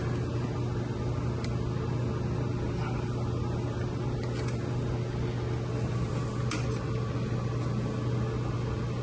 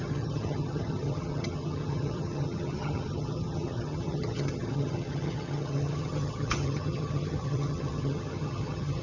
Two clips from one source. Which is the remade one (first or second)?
second